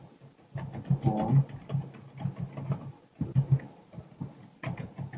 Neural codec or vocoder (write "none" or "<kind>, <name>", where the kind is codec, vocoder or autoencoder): none